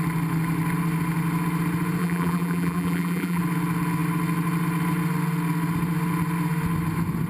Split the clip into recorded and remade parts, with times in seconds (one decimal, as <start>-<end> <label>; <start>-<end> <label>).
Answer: 0.0-2.0 recorded; 2.0-3.4 remade; 3.4-7.3 recorded